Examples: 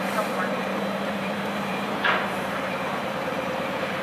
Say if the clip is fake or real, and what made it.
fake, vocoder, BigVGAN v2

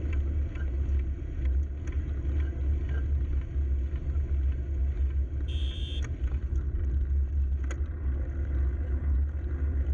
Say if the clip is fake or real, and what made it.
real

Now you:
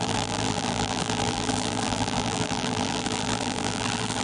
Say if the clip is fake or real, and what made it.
fake, vocoder, BigVGAN v2